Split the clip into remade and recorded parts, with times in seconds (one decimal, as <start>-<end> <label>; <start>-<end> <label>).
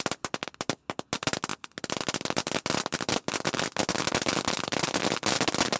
0.0-5.8 recorded